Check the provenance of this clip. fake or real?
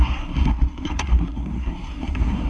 fake